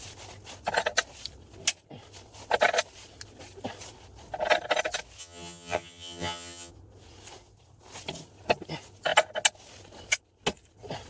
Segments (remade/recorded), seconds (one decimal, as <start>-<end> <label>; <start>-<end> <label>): 0.0-5.2 recorded; 5.2-6.7 remade; 6.7-11.1 recorded

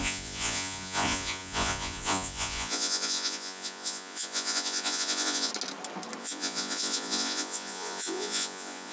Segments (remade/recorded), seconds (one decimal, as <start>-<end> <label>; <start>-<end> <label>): 0.0-5.5 remade; 5.5-6.2 recorded; 6.2-8.9 remade

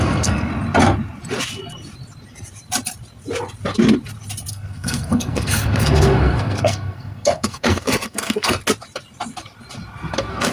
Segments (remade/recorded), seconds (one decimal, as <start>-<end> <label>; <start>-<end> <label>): 0.0-0.5 remade; 0.5-4.5 recorded; 4.5-8.6 remade; 8.6-10.1 recorded; 10.1-10.5 remade

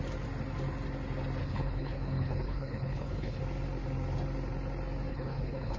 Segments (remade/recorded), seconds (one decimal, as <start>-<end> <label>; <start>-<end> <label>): 0.0-1.4 recorded; 1.4-3.4 remade; 3.4-5.1 recorded; 5.1-5.8 remade

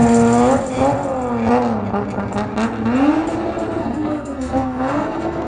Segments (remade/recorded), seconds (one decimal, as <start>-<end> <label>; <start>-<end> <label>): 0.0-3.8 recorded; 3.8-5.5 remade

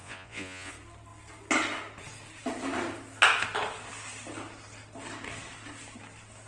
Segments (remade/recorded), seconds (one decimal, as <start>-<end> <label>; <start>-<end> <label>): 0.0-0.7 remade; 0.7-6.5 recorded